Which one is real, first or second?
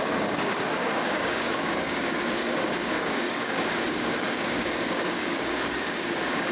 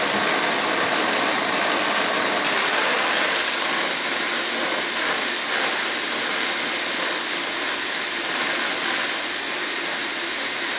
second